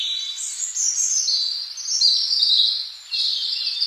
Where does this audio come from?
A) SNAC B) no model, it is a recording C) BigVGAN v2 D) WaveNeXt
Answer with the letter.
B